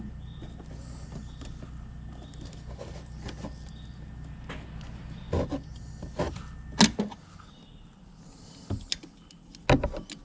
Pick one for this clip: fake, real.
real